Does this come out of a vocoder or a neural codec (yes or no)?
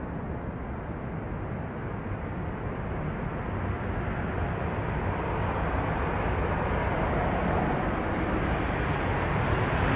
no